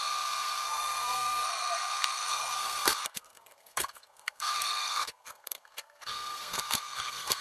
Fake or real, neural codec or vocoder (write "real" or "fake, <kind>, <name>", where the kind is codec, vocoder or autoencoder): fake, codec, SNAC